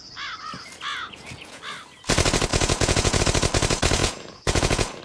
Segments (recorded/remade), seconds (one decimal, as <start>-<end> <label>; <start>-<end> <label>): 0.0-0.9 recorded; 0.9-1.6 remade; 1.6-2.5 recorded; 2.5-3.2 remade; 3.2-4.0 recorded; 4.0-5.0 remade

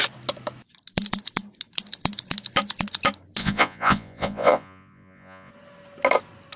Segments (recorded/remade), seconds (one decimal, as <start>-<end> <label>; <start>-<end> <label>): 0.0-3.4 recorded; 3.4-5.5 remade; 5.5-6.6 recorded

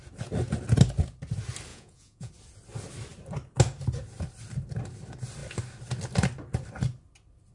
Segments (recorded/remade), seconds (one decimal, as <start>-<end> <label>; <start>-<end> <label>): 0.0-1.7 recorded; 1.7-2.3 remade; 2.3-7.5 recorded

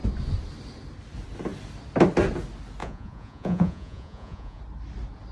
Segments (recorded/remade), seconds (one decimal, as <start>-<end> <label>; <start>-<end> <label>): 0.0-2.8 recorded; 2.8-4.6 remade; 4.6-5.3 recorded

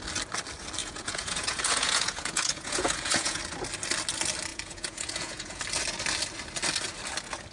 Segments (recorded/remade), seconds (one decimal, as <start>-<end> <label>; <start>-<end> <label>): 0.0-0.8 recorded; 0.8-3.4 remade; 3.4-4.5 recorded; 4.5-5.6 remade; 5.6-7.5 recorded